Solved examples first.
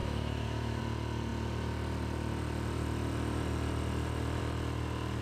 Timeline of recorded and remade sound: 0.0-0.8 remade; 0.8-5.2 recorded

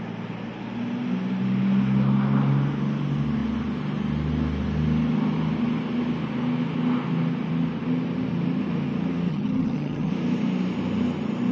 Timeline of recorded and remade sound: 0.0-9.3 recorded; 9.3-10.1 remade; 10.1-11.5 recorded

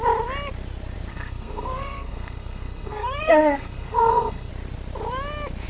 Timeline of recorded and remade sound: 0.0-1.1 recorded; 1.1-4.5 remade; 4.5-5.7 recorded

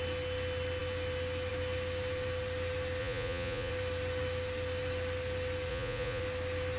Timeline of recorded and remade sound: 0.0-3.0 recorded; 3.0-3.7 remade; 3.7-5.7 recorded; 5.7-6.2 remade; 6.2-6.8 recorded